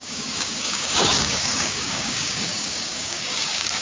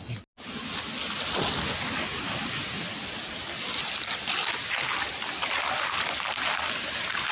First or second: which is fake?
first